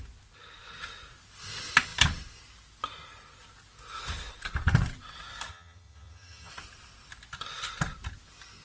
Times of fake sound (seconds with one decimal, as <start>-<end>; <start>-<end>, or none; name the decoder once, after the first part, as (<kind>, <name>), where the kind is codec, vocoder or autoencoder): 5.5-6.5 (vocoder, HiFi-GAN)